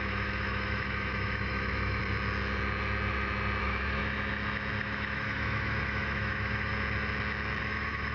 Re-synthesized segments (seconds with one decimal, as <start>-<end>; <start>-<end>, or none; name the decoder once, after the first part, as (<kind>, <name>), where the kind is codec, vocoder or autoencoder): 0.0-2.0 (autoencoder, DAC-VAE); 3.6-4.0; 4.8-6.7; 7.6-8.1